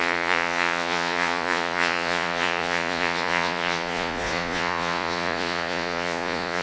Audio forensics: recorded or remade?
remade